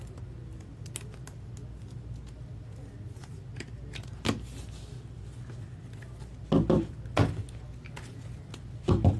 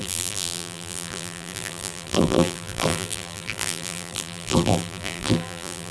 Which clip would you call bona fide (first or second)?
first